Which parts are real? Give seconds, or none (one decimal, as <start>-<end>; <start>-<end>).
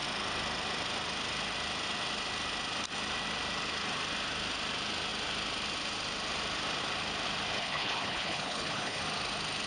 0.0-7.6; 9.0-9.7